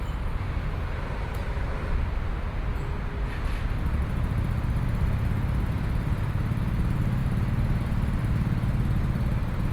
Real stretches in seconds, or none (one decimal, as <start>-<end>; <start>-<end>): 0.0-9.7